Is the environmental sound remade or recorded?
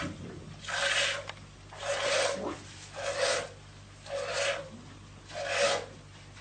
recorded